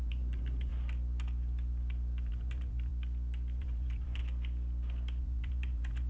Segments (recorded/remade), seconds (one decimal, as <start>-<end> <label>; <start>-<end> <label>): 0.0-0.7 remade; 0.7-2.3 recorded; 2.3-2.9 remade; 2.9-3.6 recorded; 3.6-4.2 remade; 4.2-5.2 recorded; 5.2-6.1 remade